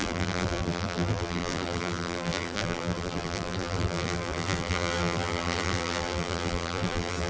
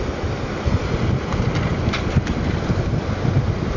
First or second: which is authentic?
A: second